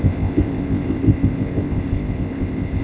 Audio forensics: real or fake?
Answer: fake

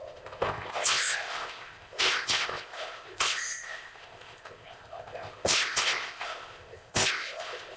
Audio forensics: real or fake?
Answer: fake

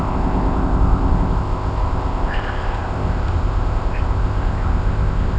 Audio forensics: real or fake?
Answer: fake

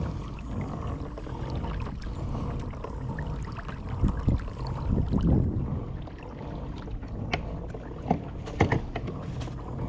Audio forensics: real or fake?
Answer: real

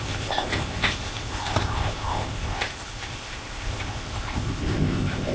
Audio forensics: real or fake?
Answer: fake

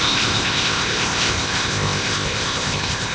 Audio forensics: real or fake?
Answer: fake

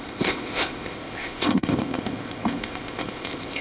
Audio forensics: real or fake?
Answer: fake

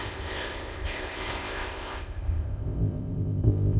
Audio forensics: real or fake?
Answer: fake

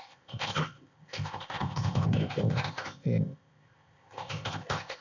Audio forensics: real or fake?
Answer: fake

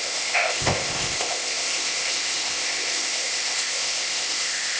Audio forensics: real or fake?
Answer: fake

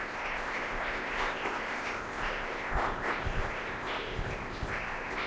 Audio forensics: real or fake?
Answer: fake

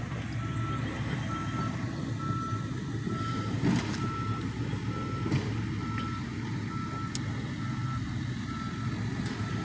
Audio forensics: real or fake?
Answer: real